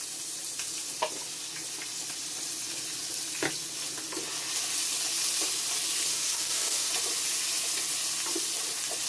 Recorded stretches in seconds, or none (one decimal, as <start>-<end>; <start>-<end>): 0.0-6.1; 6.9-9.1